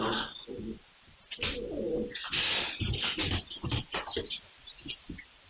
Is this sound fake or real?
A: real